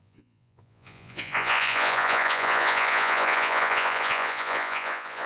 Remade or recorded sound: remade